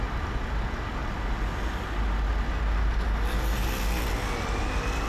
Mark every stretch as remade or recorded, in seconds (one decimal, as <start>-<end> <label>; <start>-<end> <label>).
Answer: 0.0-5.1 recorded